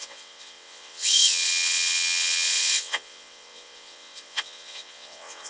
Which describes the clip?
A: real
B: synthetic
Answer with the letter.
B